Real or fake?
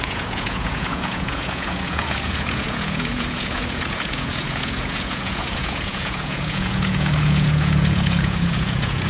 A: fake